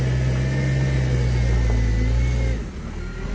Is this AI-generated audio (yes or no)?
no